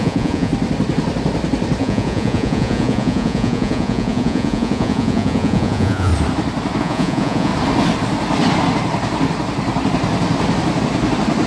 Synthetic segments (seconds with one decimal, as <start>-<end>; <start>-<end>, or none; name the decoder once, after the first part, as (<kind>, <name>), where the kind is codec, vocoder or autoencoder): 0.0-0.5 (vocoder, Vocos); 1.8-6.1; 6.8-7.5